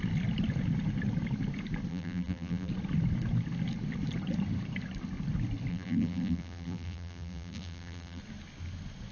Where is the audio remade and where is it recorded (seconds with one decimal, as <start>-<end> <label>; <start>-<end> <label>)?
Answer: 0.0-1.9 recorded; 1.9-2.7 remade; 2.7-5.7 recorded; 5.7-8.2 remade; 8.2-9.1 recorded